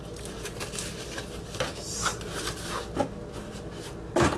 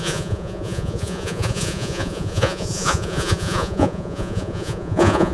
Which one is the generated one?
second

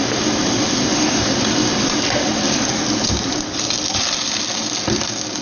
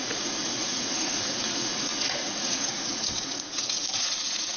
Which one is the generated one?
second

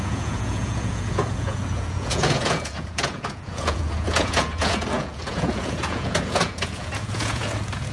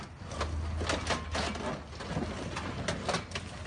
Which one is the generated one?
first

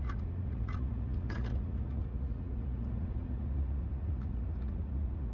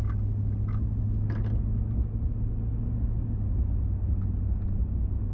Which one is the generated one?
first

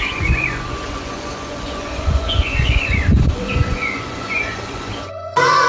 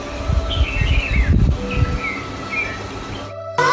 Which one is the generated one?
first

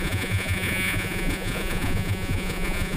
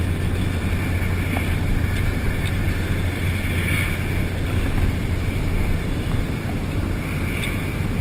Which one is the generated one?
first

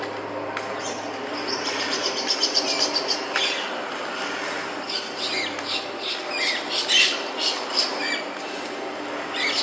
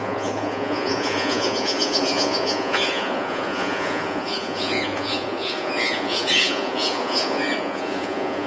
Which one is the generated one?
second